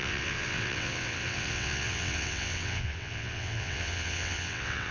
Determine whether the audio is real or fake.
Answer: fake